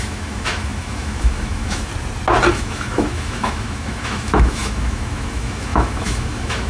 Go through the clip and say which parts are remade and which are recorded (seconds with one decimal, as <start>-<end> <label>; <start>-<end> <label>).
0.0-1.9 remade; 1.9-2.5 recorded; 2.5-6.7 remade